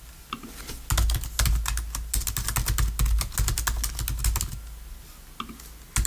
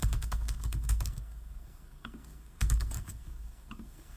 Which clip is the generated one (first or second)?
second